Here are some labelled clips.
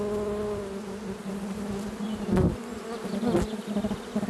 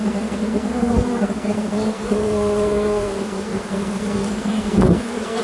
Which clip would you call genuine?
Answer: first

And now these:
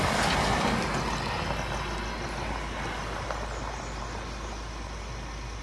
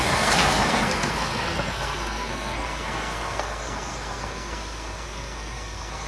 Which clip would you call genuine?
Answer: first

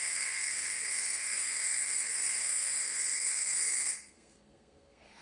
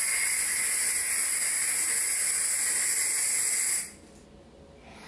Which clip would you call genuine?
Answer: second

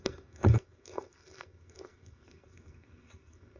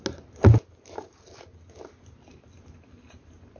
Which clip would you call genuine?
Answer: second